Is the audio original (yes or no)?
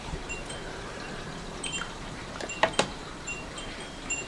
no